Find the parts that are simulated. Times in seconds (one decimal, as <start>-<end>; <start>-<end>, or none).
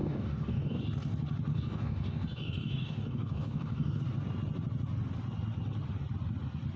0.0-0.8; 1.5-4.0